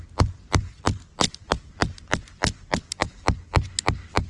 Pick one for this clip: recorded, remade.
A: recorded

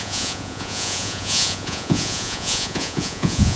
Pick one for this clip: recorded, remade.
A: remade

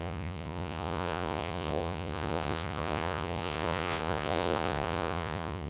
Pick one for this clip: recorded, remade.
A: remade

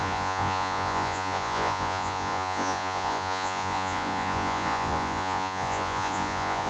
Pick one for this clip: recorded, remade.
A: remade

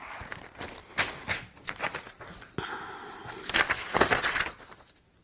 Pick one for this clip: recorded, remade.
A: recorded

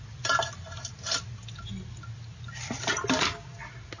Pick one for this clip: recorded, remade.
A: recorded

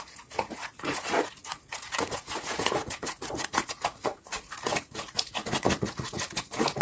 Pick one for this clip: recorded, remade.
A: remade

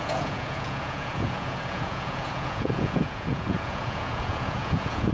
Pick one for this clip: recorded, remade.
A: remade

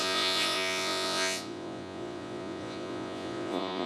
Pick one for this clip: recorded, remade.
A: remade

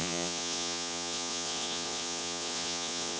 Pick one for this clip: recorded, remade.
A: remade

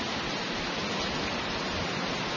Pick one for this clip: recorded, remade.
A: recorded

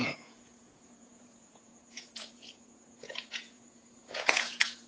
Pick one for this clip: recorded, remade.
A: remade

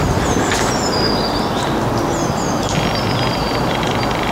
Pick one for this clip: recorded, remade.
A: recorded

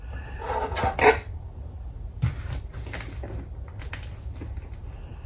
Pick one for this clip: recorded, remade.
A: recorded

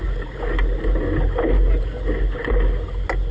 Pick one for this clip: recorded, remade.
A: recorded